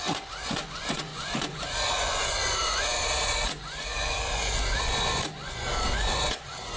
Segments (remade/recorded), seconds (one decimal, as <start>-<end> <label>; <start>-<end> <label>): 0.0-6.8 remade